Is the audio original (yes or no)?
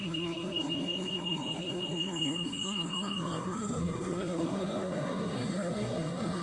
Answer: no